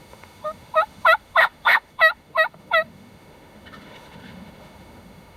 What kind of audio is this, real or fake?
fake